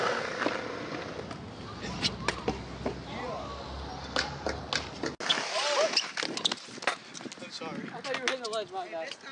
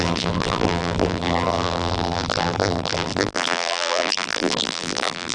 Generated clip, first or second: second